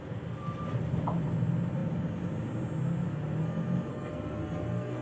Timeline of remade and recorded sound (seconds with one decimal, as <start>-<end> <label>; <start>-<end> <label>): 0.0-3.9 recorded; 3.9-5.0 remade